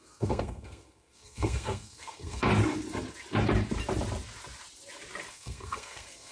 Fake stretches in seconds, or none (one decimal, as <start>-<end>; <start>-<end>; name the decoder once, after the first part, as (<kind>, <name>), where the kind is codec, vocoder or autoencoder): 0.0-2.5 (codec, SNAC); 5.3-6.3